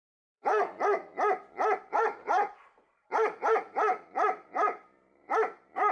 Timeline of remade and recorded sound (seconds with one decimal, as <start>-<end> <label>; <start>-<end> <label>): 0.0-0.5 remade; 0.5-1.9 recorded; 1.9-5.9 remade